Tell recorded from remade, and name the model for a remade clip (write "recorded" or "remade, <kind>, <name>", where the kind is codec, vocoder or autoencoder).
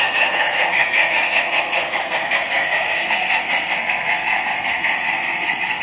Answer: remade, codec, SNAC